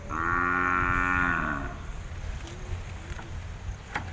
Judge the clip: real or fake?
real